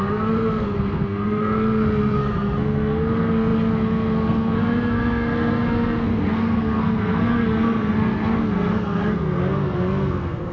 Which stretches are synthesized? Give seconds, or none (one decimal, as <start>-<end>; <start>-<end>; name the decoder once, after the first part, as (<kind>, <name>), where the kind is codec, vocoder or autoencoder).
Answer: 0.0-10.5 (codec, SNAC)